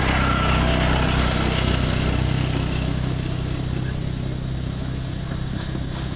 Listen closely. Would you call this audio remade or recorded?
recorded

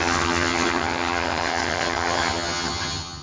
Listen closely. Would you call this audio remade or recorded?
remade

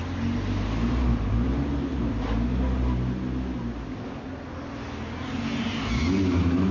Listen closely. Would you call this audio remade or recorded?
recorded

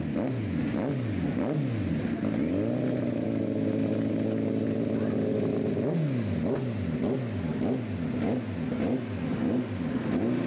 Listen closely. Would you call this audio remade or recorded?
recorded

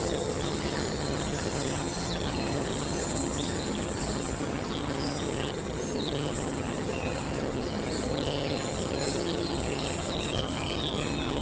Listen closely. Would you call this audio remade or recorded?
remade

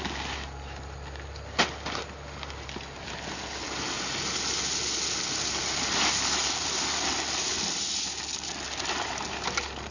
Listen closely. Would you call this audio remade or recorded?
recorded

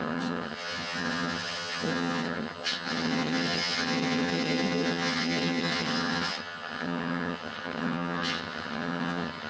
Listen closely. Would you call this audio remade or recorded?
remade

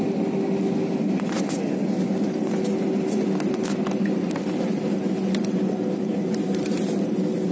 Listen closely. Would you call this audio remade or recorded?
recorded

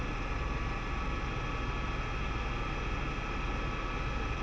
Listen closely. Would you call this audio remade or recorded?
recorded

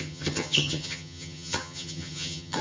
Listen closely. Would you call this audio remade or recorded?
remade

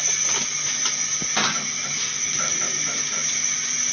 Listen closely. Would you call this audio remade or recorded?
recorded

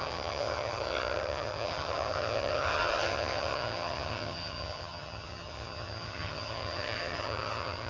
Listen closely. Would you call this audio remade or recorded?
remade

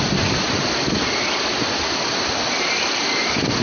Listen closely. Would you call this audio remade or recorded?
recorded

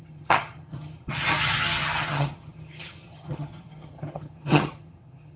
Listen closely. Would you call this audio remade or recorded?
remade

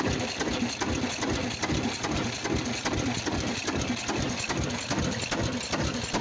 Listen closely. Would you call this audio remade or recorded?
recorded